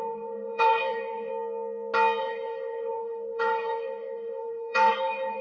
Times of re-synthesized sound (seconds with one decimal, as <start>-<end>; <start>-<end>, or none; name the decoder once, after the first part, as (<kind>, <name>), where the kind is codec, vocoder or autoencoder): 0.0-1.3 (codec, DAC); 2.2-5.4